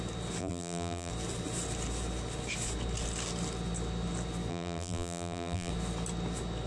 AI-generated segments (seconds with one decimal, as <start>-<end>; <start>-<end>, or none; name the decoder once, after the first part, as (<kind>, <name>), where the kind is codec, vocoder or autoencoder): 0.4-1.1 (vocoder, BigVGAN v2); 4.5-5.7